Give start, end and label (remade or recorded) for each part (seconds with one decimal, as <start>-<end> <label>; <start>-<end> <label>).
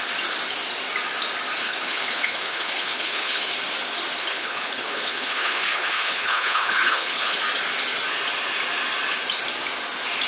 0.0-1.6 recorded; 1.6-3.5 remade; 3.5-4.2 recorded; 4.2-7.4 remade; 7.4-10.3 recorded